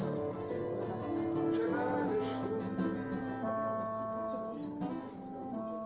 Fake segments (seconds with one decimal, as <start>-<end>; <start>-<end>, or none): none